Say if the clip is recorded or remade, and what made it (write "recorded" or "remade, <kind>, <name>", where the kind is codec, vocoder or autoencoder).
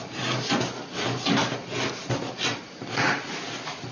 recorded